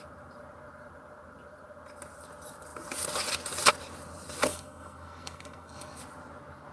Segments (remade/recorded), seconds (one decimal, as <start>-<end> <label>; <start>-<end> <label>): 0.0-4.5 recorded; 4.5-6.0 remade; 6.0-6.7 recorded